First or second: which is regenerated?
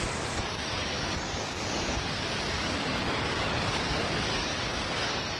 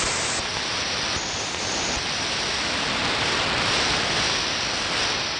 first